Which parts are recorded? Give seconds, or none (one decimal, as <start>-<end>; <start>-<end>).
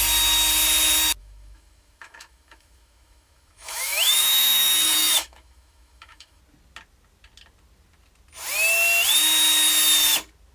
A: 0.0-1.2; 6.4-10.5